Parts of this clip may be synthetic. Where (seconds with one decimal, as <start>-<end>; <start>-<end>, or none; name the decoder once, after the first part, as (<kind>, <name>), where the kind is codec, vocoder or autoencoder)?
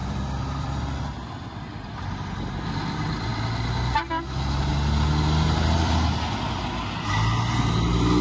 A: 0.0-0.8 (vocoder, BigVGAN v2); 3.3-4.1; 4.7-5.9